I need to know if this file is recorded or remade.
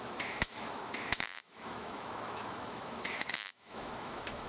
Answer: remade